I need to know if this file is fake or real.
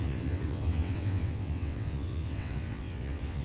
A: fake